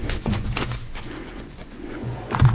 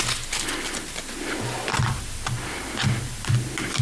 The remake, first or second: first